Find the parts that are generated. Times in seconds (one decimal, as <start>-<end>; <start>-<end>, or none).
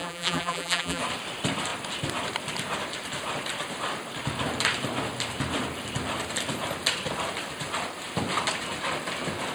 0.0-1.0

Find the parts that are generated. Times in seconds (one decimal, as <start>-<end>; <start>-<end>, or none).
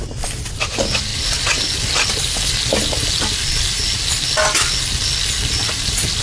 none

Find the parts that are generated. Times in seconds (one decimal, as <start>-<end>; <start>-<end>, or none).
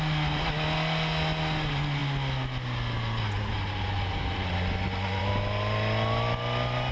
none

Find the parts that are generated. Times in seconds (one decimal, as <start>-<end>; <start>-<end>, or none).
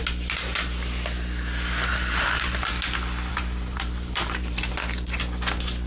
1.9-2.7; 3.3-4.7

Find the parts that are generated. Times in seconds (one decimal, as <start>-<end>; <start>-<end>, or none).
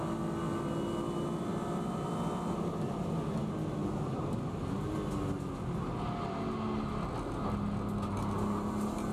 none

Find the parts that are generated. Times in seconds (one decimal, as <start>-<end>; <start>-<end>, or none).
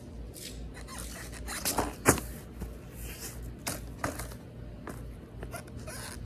none